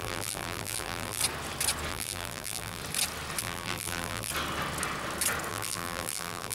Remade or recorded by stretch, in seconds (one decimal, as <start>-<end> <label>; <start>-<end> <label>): 0.0-1.2 remade; 1.2-1.9 recorded; 1.9-2.8 remade; 2.8-3.4 recorded; 3.4-4.3 remade; 4.3-5.5 recorded; 5.5-6.5 remade